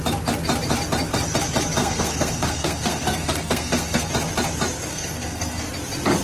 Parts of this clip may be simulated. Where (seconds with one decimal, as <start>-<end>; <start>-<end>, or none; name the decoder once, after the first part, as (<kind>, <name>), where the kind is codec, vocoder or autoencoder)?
1.8-4.1 (codec, SNAC); 4.9-5.7